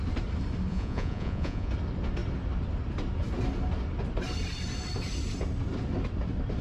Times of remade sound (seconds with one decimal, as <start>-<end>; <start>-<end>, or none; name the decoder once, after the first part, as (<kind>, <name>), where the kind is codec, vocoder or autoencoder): 0.7-1.7 (vocoder, Vocos)